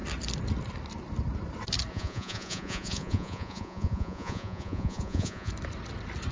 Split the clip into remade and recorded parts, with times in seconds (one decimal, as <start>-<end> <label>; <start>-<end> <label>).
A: 0.0-1.9 recorded; 1.9-5.5 remade; 5.5-6.3 recorded